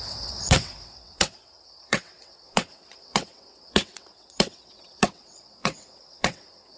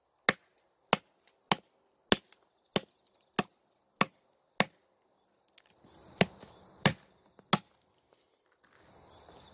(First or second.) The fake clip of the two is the first